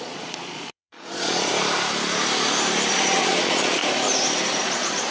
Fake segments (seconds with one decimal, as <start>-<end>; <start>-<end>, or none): 0.0-1.5; 2.9-3.8; 4.6-5.1